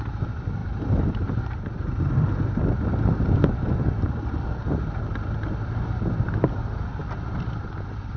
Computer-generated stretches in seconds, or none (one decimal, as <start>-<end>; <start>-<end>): none